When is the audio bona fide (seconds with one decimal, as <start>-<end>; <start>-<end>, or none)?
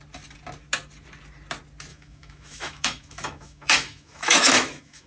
0.0-1.9